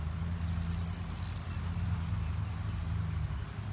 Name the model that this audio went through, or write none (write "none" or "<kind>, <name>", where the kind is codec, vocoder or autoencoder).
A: none